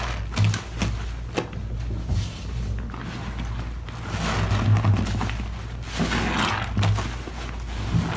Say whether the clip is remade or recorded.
recorded